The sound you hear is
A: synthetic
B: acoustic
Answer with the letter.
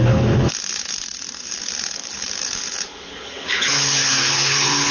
A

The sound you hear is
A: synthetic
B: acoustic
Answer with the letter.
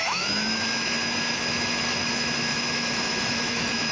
A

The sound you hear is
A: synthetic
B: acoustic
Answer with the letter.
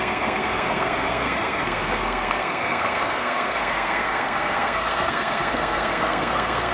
A